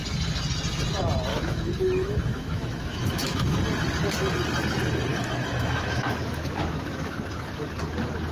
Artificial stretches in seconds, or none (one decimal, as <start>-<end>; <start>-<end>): 1.3-3.6; 5.1-7.1